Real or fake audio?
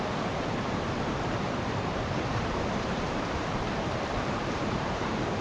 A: fake